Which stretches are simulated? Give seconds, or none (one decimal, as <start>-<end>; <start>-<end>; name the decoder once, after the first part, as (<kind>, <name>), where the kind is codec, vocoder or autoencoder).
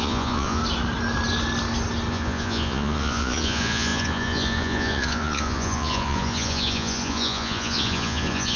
0.0-0.6 (vocoder, Vocos); 2.1-8.6